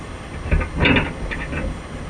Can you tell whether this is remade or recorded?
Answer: recorded